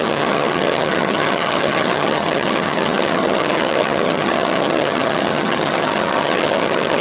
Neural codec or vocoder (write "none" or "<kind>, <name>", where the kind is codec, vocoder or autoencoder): vocoder, HiFi-GAN